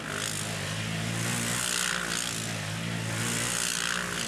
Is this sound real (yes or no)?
yes